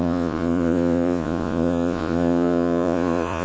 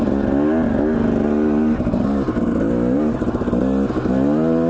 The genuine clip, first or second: second